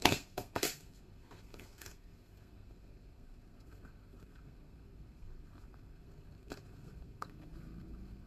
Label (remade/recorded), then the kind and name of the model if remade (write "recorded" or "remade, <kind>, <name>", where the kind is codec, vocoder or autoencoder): remade, codec, SNAC